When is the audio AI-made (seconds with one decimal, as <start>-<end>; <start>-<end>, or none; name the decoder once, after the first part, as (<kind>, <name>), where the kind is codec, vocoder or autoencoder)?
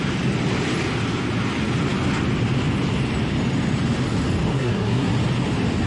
4.5-5.1 (codec, SNAC)